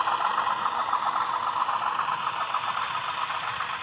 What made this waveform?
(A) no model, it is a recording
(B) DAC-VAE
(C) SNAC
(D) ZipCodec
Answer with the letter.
A